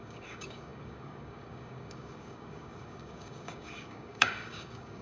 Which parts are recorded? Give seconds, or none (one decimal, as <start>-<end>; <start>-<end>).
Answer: none